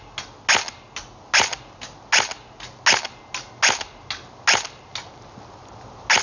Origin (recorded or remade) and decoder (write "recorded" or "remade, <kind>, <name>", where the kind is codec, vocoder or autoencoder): recorded